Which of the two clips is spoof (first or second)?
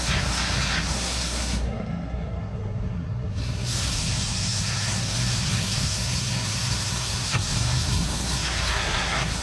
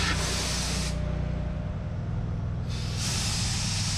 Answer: first